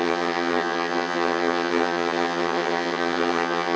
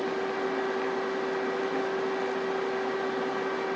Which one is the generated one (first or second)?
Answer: first